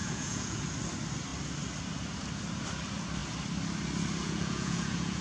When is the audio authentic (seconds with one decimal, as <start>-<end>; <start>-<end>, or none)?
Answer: 0.6-4.2

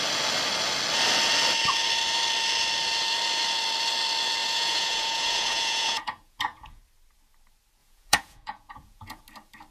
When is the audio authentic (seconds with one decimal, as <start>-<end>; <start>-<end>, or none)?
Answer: 0.0-4.4; 6.8-7.8; 9.2-9.7

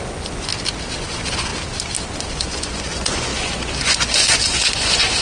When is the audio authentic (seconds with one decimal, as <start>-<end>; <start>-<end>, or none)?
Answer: 0.5-1.0; 1.5-2.3

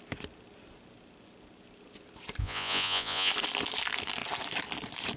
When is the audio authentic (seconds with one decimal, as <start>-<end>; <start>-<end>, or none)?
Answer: 0.0-2.4; 3.3-5.2

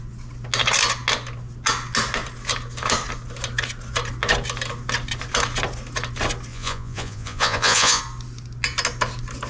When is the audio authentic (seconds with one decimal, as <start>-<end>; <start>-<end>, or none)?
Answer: 0.0-6.5; 8.0-9.5

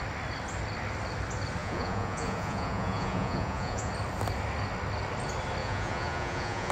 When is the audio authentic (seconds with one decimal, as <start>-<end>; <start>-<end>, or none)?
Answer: 0.0-1.6; 3.9-5.6

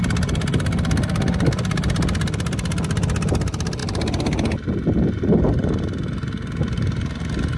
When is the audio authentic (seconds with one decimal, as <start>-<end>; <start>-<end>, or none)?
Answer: 0.0-7.6

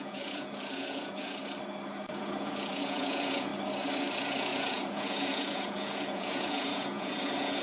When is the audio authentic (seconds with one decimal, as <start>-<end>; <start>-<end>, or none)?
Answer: 1.4-2.1; 3.5-4.1